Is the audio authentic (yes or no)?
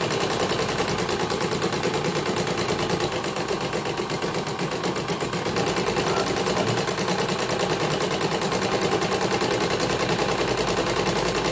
yes